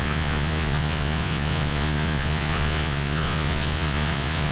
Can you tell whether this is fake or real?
fake